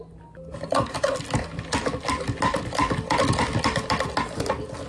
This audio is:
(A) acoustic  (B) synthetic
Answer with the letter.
A